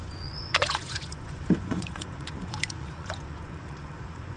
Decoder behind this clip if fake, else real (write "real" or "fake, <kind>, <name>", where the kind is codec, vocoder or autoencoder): fake, vocoder, Vocos